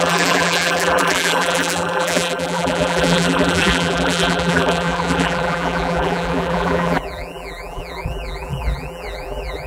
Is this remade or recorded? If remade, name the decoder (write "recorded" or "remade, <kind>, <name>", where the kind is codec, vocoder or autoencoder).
remade, vocoder, BigVGAN v2